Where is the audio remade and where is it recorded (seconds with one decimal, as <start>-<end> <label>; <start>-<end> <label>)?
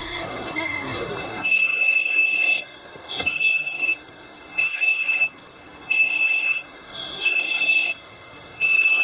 0.0-9.0 remade